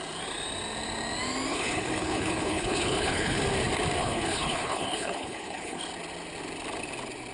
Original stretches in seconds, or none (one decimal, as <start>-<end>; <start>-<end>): 0.0-1.5; 3.4-4.0; 5.8-7.3

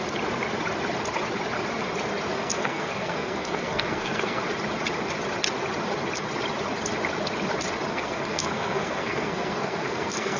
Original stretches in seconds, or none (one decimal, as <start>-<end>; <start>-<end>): 0.0-2.4; 4.4-7.9

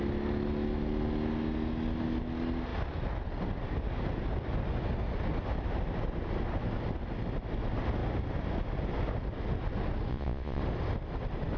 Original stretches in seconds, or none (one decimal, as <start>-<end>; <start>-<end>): 0.0-10.1; 10.6-11.6